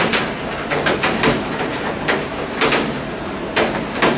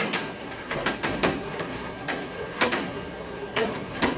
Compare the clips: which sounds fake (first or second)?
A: second